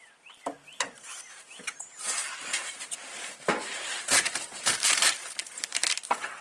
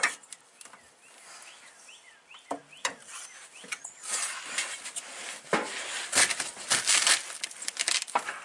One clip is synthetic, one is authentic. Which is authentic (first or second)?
second